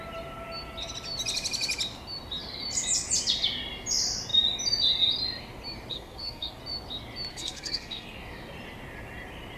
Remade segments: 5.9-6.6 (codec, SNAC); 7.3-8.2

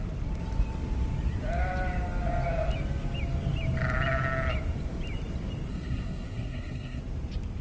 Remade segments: 5.7-7.0 (codec, SNAC)